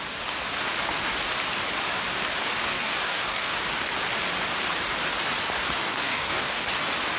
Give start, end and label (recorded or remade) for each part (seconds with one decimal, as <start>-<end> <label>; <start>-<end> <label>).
0.0-2.7 recorded; 2.7-3.5 remade; 3.5-5.8 recorded; 5.8-6.7 remade; 6.7-7.2 recorded